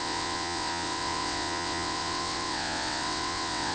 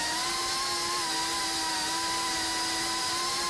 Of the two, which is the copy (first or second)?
first